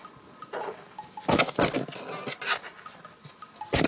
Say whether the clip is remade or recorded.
recorded